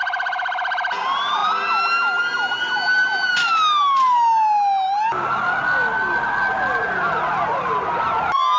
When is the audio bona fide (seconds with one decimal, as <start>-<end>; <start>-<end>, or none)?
0.0-8.6